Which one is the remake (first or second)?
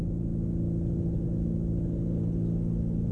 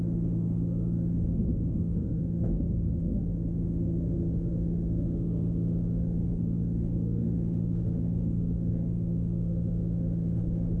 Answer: second